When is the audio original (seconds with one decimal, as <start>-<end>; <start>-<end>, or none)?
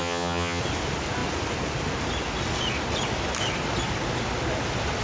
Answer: 0.6-5.0